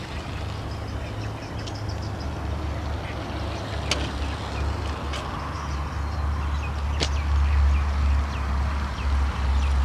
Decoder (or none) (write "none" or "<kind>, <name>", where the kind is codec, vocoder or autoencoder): none